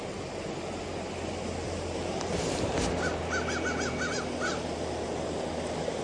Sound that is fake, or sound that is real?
real